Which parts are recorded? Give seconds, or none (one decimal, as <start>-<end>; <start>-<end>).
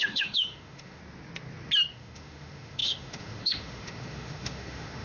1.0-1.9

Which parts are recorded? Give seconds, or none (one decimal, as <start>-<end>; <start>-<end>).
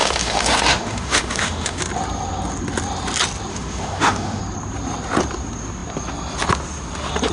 1.8-3.5; 4.4-7.3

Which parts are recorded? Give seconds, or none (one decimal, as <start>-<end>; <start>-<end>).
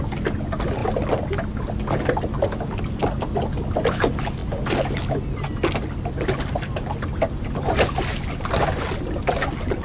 0.0-9.8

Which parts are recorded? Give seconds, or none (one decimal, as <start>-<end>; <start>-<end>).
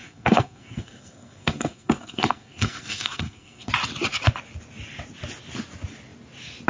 3.7-6.7